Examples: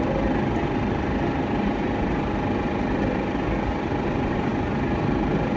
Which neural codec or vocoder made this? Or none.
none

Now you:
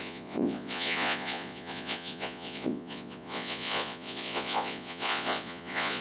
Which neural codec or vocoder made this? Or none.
vocoder, Vocos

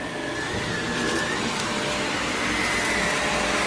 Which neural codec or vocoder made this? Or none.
none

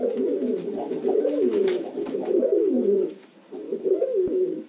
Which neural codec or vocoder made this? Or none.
autoencoder, DAC-VAE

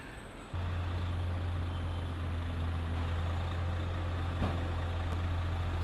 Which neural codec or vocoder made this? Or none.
none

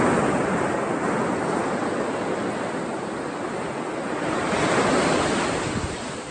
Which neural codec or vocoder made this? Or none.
none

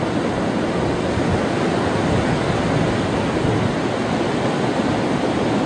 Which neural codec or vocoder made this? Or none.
none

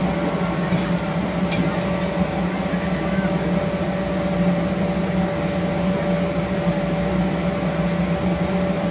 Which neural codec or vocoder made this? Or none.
none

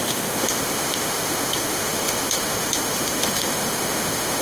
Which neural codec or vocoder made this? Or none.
autoencoder, DAC-VAE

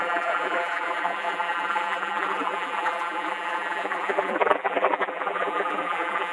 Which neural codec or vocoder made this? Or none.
vocoder, BigVGAN v2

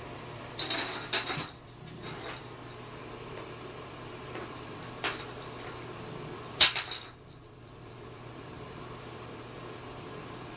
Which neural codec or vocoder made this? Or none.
vocoder, BigVGAN v2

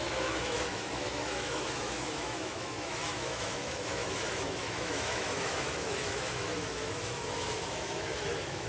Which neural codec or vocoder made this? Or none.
autoencoder, DAC-VAE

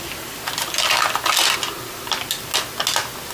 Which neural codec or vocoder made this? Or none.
none